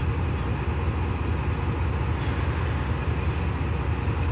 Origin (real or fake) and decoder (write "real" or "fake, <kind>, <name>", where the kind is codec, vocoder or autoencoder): real